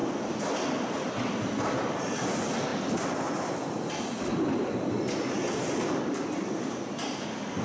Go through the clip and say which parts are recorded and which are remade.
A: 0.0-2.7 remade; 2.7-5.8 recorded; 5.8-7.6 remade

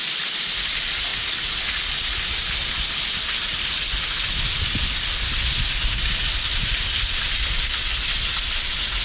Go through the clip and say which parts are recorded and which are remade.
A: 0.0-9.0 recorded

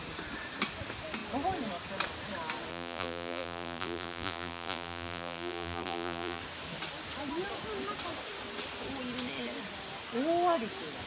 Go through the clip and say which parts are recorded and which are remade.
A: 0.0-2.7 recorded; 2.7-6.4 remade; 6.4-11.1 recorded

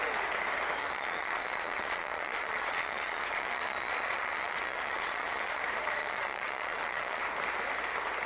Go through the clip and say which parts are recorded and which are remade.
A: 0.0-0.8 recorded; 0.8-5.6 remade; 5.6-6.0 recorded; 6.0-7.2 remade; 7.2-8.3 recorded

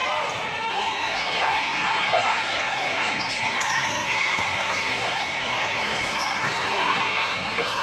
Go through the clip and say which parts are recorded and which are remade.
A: 0.0-0.7 recorded; 0.7-7.8 remade

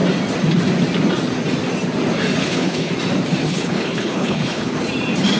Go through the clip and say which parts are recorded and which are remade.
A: 0.0-2.4 recorded; 2.4-2.9 remade; 2.9-3.5 recorded; 3.5-4.7 remade; 4.7-5.4 recorded